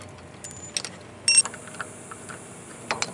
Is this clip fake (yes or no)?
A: no